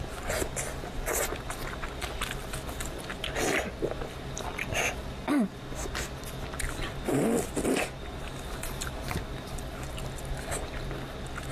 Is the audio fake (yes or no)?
no